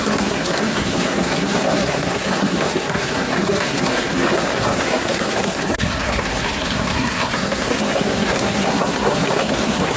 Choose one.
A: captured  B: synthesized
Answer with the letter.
B